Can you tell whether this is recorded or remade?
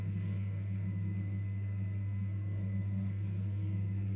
remade